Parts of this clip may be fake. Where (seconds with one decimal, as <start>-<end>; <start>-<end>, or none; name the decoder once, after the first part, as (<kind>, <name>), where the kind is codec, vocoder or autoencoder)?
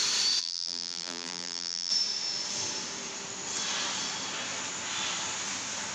0.4-1.9 (vocoder, BigVGAN v2)